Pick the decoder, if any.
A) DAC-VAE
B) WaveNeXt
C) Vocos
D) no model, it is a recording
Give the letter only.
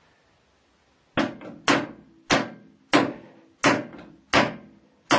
D